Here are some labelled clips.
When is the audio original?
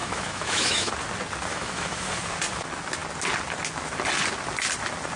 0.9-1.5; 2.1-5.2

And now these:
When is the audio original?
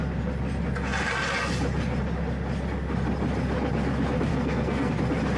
0.0-4.3; 4.9-5.4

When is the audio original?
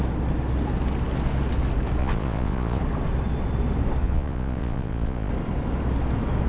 0.0-2.0; 2.8-4.0; 5.3-6.5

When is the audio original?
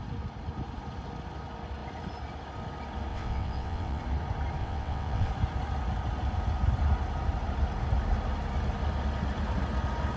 0.0-3.1; 4.0-4.6; 5.3-10.2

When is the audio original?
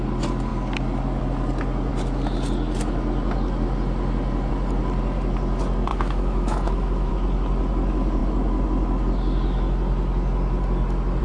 0.0-5.9; 7.1-11.2